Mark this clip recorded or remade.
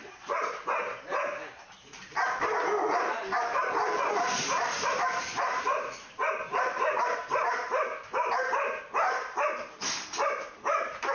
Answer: remade